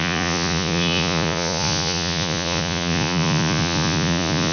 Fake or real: fake